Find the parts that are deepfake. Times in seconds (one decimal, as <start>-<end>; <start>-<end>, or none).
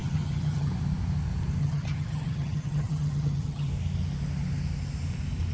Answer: 0.0-0.7; 1.6-3.7